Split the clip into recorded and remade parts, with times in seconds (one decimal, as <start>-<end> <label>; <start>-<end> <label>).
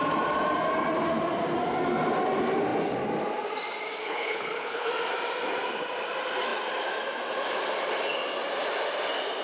0.0-4.0 recorded; 4.0-4.9 remade; 4.9-9.4 recorded